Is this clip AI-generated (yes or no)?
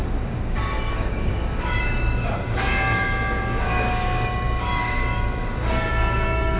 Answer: yes